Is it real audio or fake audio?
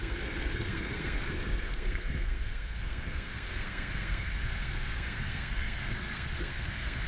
fake